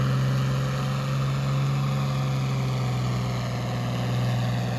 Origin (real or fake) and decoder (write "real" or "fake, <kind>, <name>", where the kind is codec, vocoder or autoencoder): real